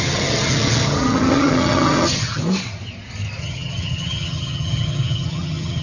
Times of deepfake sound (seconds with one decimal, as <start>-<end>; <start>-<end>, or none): 0.0-2.4; 3.4-5.8